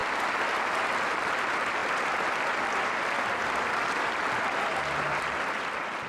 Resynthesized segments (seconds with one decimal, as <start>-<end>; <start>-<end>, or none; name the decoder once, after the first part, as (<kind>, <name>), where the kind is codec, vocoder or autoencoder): none